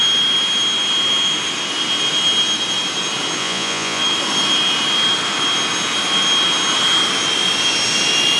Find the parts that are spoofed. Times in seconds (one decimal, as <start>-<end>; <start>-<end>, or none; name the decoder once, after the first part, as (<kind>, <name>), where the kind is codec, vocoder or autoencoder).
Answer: 3.4-4.0 (vocoder, Vocos)

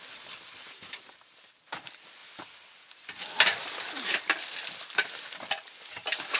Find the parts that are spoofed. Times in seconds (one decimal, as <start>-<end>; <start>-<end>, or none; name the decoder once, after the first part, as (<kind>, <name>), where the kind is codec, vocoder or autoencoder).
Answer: none

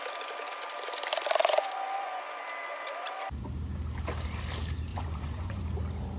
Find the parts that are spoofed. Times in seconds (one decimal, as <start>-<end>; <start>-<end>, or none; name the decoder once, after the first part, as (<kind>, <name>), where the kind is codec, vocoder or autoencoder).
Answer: 1.4-2.4 (vocoder, Vocos); 4.9-5.6

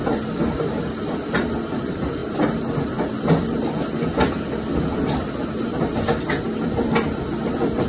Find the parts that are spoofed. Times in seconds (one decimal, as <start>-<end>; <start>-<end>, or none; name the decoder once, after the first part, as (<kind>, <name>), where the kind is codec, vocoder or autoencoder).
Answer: none